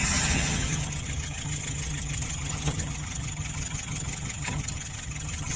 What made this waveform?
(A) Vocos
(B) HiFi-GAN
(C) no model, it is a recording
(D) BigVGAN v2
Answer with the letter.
B